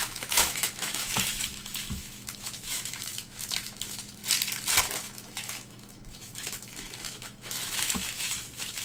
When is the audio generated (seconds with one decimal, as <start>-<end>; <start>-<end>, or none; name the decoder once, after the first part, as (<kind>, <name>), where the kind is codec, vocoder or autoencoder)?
0.0-4.2 (autoencoder, DAC-VAE); 4.8-8.8